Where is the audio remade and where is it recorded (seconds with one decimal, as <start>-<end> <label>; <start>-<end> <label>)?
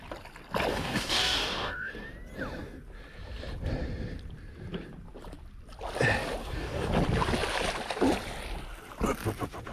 0.0-0.7 recorded; 0.7-1.9 remade; 1.9-6.4 recorded; 6.4-6.9 remade; 6.9-9.7 recorded